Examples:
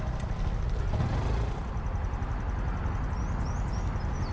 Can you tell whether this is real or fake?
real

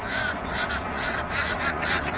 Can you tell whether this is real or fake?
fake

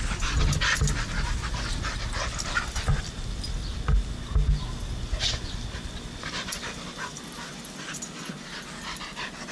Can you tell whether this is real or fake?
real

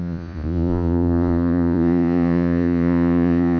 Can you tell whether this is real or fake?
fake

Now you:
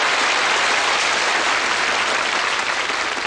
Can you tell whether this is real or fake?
real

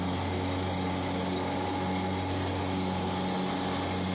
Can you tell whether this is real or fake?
real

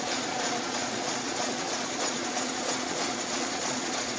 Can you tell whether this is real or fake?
fake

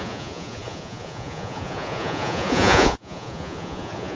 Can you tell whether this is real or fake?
fake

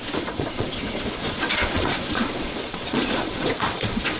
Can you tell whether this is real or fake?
fake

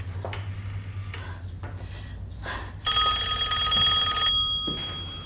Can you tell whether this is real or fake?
real